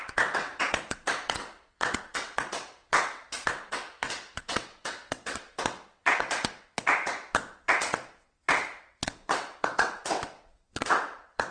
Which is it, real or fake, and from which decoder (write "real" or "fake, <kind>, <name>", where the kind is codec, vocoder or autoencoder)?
fake, vocoder, WaveNeXt